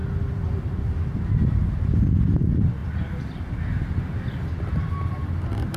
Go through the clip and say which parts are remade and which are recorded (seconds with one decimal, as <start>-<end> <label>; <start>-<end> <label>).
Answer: 0.0-5.8 recorded